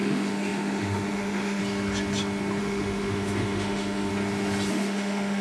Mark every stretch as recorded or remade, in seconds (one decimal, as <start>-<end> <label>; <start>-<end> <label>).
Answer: 0.0-1.6 remade; 1.6-2.6 recorded; 2.6-4.1 remade; 4.1-4.7 recorded; 4.7-5.4 remade